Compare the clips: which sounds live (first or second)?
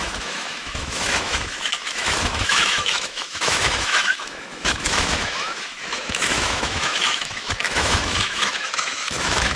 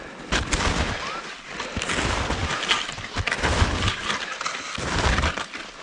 second